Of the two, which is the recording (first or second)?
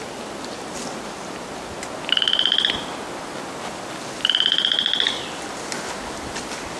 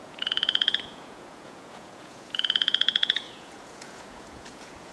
first